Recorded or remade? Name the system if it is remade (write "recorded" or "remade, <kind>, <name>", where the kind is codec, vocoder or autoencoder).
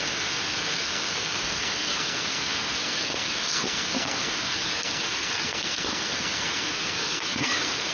remade, codec, SNAC